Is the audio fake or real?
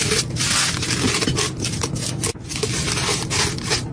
real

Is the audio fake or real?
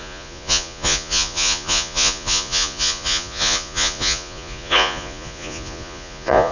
fake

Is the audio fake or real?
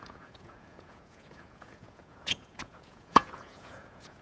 fake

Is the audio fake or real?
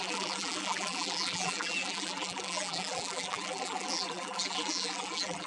fake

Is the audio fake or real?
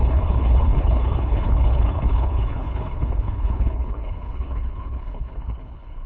fake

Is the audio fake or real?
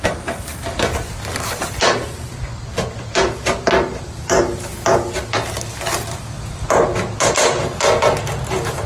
real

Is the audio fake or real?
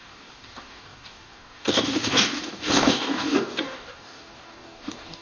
fake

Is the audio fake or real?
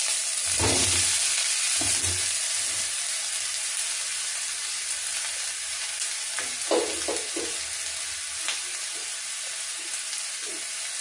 real